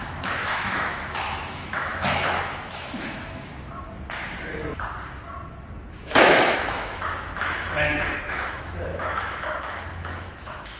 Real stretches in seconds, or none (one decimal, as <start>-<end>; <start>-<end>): 3.5-5.9